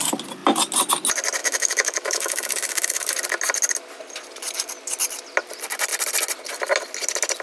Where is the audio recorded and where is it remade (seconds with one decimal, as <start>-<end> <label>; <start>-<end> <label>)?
0.0-1.4 recorded; 1.4-3.1 remade; 3.1-7.4 recorded